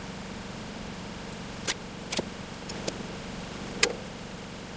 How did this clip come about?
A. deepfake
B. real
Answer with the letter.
B